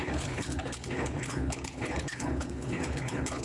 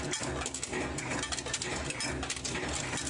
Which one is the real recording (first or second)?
second